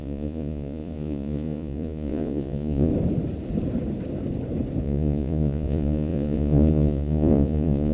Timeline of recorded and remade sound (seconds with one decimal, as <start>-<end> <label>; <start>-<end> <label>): 0.0-2.9 remade; 2.9-4.8 recorded; 4.8-7.9 remade